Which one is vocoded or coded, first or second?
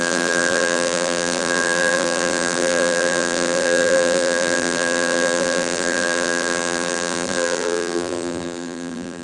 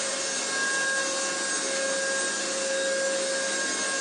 first